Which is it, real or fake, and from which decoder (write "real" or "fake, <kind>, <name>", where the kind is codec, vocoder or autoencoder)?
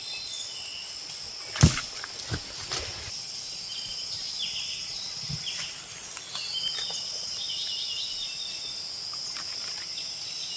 real